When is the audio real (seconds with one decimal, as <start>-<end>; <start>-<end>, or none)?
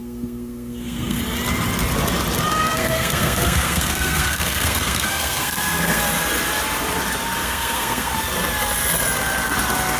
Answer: 1.2-2.5; 6.0-7.4; 8.2-10.0